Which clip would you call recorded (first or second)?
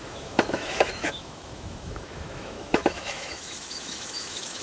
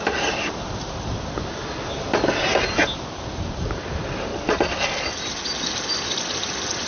second